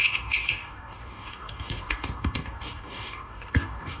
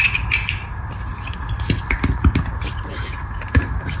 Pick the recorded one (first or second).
second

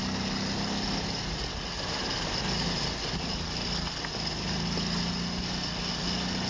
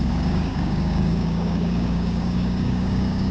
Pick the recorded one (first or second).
first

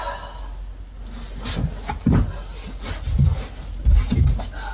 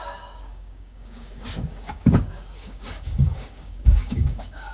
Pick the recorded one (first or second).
first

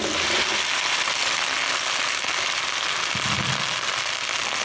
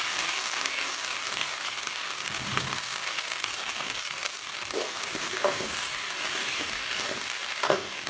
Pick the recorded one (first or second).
first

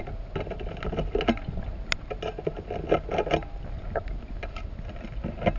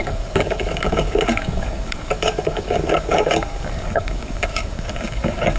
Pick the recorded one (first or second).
first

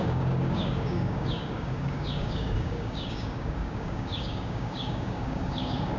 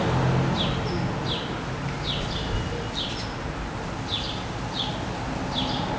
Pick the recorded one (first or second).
second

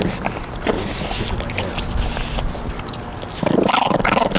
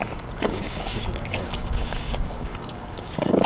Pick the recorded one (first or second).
first